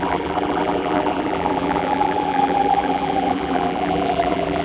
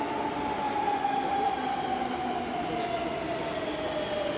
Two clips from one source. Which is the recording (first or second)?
second